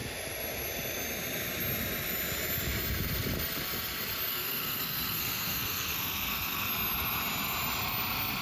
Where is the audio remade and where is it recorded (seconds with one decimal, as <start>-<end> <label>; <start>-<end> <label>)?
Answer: 0.0-4.3 recorded; 4.3-6.7 remade; 6.7-8.4 recorded

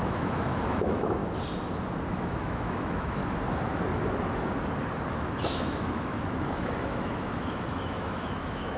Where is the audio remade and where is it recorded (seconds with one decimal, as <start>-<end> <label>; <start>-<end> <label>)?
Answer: 0.0-1.2 remade; 1.2-2.1 recorded; 2.1-3.2 remade; 3.2-5.1 recorded; 5.1-8.8 remade

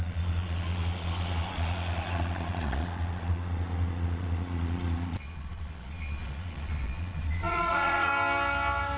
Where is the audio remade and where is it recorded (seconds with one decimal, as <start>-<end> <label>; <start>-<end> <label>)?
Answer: 0.0-8.1 remade; 8.1-9.0 recorded